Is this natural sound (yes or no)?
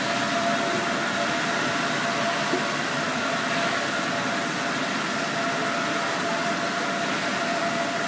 yes